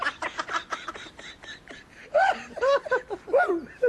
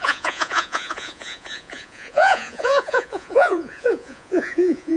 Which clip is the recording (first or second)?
first